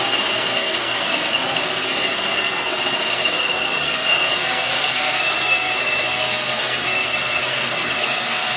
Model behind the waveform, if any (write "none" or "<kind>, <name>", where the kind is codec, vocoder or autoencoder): codec, SNAC